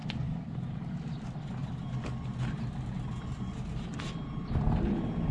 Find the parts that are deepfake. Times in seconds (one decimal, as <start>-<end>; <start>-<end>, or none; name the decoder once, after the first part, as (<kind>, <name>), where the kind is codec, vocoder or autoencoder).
none